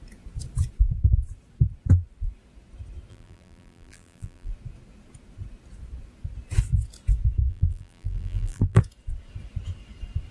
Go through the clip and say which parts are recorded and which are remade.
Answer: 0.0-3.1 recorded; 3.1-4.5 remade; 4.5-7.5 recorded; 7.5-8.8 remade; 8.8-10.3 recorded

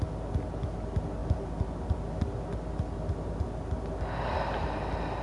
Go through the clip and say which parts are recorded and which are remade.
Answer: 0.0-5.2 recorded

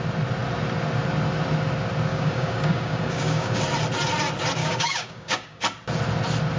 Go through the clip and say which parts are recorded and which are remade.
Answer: 0.0-2.1 recorded; 2.1-3.6 remade; 3.6-4.6 recorded; 4.6-5.6 remade; 5.6-6.6 recorded

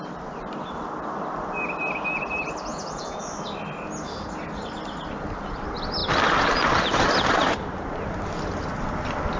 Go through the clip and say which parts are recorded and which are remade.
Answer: 0.0-2.7 recorded; 2.7-3.2 remade; 3.2-9.4 recorded

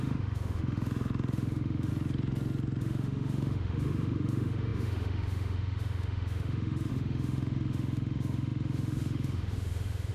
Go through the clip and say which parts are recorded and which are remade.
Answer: 0.0-1.9 remade; 1.9-2.8 recorded; 2.8-10.1 remade

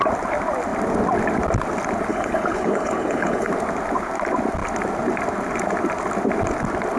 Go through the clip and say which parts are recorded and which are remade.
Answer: 0.0-2.1 recorded; 2.1-3.5 remade; 3.5-7.0 recorded